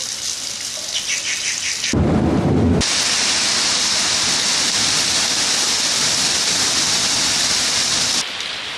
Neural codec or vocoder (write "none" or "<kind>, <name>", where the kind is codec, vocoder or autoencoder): none